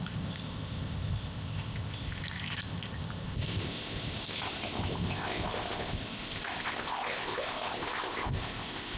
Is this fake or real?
fake